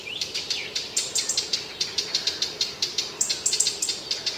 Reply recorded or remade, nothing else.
remade